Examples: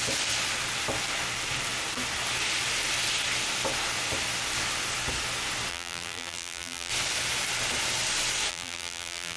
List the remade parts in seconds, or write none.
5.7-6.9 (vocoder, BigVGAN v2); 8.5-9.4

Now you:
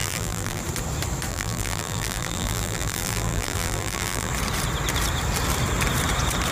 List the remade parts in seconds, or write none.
0.0-0.6 (vocoder, BigVGAN v2); 1.3-4.3

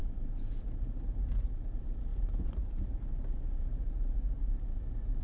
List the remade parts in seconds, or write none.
0.0-5.2 (vocoder, BigVGAN v2)

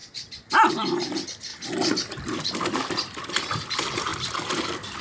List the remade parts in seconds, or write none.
0.7-1.5 (vocoder, BigVGAN v2); 2.4-5.0

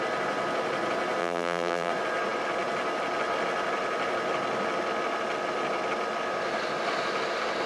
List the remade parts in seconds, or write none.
1.2-1.9 (vocoder, BigVGAN v2)